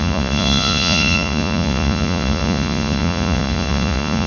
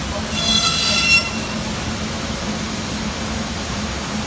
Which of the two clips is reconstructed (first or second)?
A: first